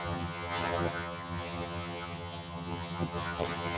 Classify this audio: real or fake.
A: fake